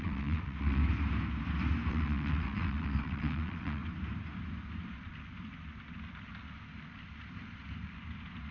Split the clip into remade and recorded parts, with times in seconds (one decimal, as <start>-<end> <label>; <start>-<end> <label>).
0.0-0.8 remade; 0.8-1.9 recorded; 1.9-3.8 remade; 3.8-8.5 recorded